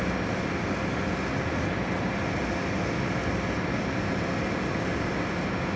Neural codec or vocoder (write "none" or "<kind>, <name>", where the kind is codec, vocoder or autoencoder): none